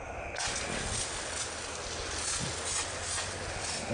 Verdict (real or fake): real